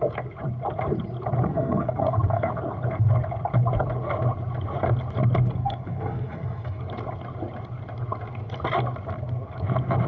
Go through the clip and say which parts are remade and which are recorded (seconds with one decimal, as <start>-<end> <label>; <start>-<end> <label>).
0.0-1.5 recorded; 1.5-2.5 remade; 2.5-5.6 recorded; 5.6-6.8 remade; 6.8-10.1 recorded